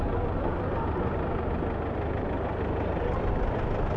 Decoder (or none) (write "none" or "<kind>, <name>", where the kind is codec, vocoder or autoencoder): none